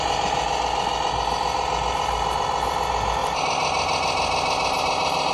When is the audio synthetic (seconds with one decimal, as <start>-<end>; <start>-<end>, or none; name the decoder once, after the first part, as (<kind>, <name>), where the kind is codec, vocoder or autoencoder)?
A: none